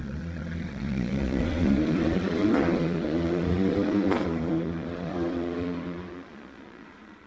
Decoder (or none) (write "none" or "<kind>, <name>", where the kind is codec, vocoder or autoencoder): vocoder, Vocos